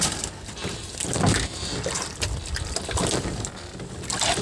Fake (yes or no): no